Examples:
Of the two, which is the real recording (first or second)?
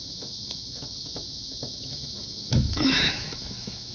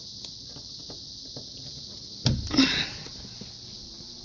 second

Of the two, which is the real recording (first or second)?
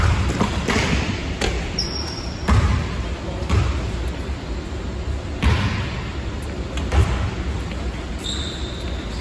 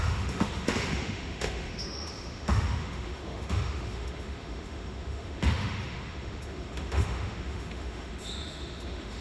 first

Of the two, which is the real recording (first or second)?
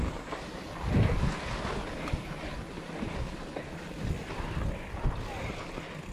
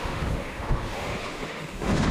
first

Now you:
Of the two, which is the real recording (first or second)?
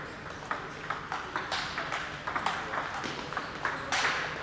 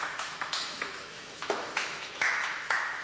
first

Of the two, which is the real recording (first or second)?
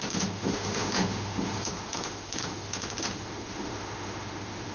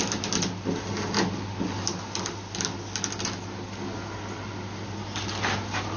second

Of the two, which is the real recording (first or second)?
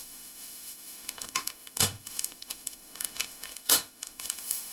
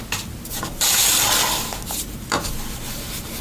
second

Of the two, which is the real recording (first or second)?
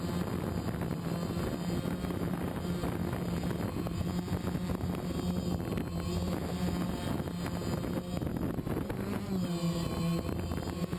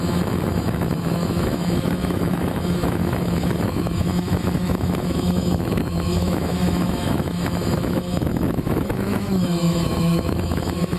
first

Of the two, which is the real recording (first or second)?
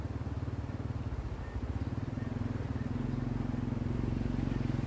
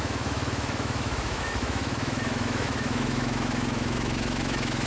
first